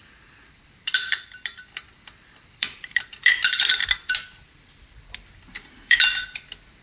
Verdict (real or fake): fake